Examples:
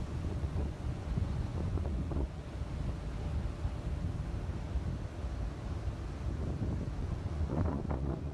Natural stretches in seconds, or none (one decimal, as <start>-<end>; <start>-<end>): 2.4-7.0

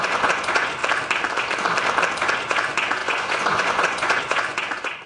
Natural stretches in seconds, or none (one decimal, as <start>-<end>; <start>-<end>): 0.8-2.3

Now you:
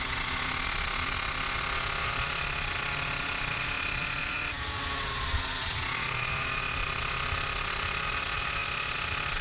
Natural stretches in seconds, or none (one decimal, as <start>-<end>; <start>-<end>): none

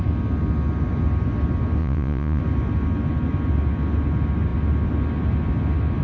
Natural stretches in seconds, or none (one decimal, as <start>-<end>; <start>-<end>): 0.0-1.8; 2.4-6.0

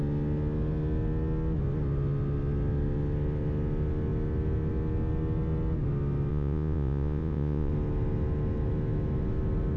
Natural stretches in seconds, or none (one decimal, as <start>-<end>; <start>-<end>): 0.0-6.3; 7.7-9.8

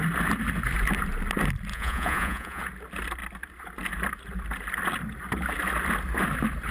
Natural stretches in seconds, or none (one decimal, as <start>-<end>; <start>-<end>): 0.0-1.7; 2.6-6.7

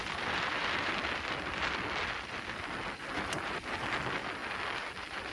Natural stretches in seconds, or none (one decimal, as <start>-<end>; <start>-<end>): 0.0-5.3

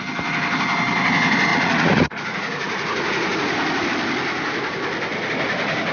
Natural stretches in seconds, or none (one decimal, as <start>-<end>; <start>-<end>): 0.0-1.5; 3.9-5.9